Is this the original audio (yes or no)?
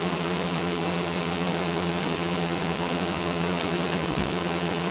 no